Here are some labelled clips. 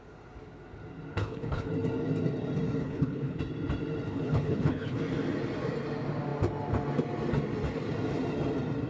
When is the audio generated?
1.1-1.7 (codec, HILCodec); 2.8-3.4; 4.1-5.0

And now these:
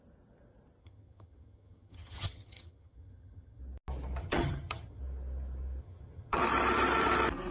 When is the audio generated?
0.8-3.6 (vocoder, HiFi-GAN); 4.2-5.0; 5.8-6.4

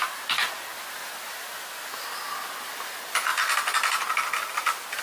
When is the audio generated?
none

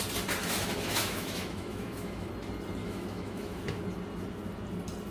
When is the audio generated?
0.4-2.3 (autoencoder, DAC-VAE); 2.8-3.7

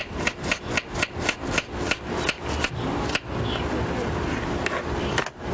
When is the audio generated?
none

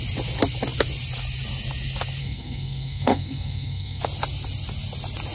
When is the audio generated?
2.2-4.0 (codec, SNAC)

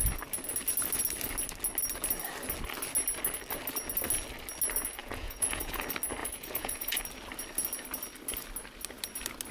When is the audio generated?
5.0-5.8 (vocoder, Vocos); 6.2-7.0

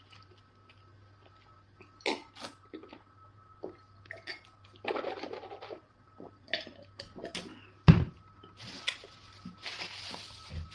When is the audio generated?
none